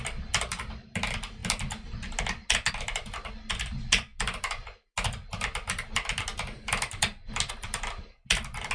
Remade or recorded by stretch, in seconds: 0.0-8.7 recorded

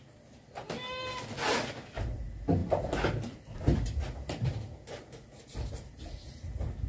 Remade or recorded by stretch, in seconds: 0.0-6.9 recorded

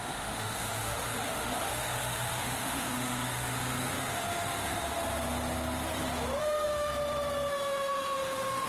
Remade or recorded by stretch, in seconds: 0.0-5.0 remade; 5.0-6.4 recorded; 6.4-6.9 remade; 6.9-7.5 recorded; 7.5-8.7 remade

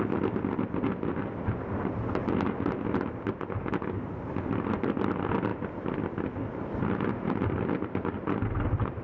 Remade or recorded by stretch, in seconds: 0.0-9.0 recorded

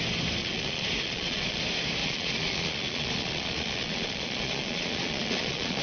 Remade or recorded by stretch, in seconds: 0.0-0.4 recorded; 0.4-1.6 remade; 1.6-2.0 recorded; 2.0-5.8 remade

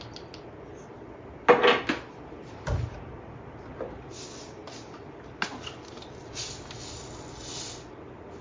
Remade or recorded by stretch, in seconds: 0.0-8.4 recorded

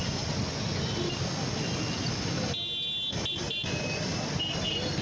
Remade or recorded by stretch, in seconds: 0.0-5.0 recorded

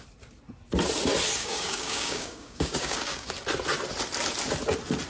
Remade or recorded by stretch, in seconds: 0.0-1.4 recorded; 1.4-3.3 remade; 3.3-5.1 recorded